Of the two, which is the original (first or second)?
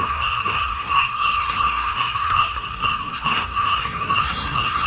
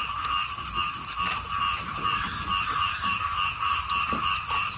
second